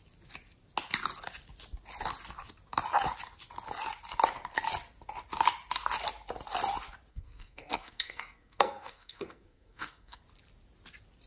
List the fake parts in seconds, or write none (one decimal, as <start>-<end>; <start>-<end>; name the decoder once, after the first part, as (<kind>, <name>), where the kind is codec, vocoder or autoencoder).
7.1-10.2 (codec, SNAC)